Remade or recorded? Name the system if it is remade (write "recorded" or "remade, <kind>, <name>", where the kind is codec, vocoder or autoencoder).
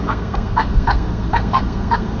remade, codec, SNAC